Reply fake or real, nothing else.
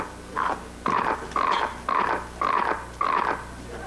real